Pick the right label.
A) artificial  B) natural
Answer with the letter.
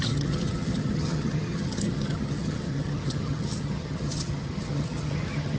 A